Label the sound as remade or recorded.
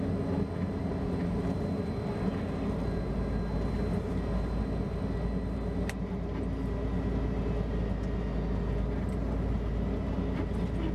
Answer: recorded